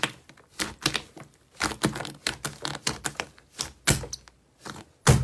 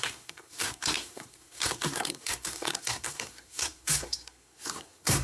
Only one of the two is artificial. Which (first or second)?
second